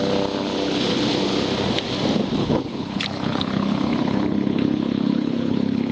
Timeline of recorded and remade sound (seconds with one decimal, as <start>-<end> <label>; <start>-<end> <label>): 0.0-2.4 recorded; 2.4-5.9 remade